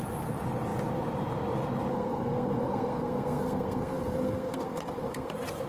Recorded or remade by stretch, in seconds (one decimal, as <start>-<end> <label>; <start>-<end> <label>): 0.0-1.9 recorded; 1.9-5.3 remade; 5.3-5.7 recorded